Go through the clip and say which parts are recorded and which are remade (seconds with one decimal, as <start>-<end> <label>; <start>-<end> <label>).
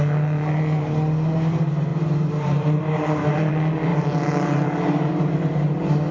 0.0-1.9 recorded; 1.9-3.5 remade; 3.5-3.9 recorded; 3.9-5.1 remade; 5.1-6.1 recorded